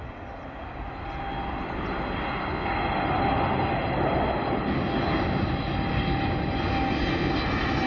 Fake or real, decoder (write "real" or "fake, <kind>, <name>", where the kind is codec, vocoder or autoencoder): real